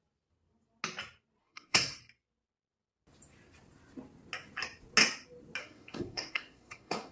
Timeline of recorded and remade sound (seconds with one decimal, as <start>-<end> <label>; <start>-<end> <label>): 0.0-1.4 recorded; 1.4-2.0 remade; 2.0-5.6 recorded; 5.6-7.1 remade